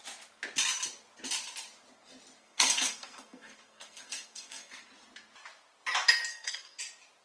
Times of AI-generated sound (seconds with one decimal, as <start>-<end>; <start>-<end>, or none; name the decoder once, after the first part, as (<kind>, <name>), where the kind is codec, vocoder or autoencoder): 2.4-4.8 (codec, SNAC); 6.3-6.8